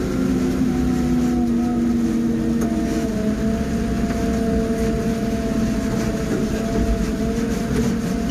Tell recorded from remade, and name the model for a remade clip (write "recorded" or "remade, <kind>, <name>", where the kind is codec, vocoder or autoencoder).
recorded